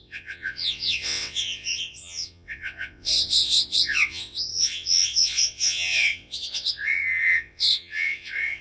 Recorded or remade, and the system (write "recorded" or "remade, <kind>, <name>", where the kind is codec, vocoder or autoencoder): remade, vocoder, WaveNeXt